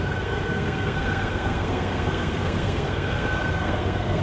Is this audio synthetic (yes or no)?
yes